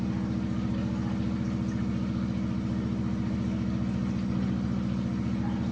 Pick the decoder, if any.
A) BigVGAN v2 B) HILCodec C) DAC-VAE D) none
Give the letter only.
D